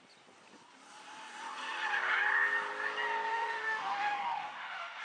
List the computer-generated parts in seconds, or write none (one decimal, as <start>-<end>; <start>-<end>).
3.3-5.0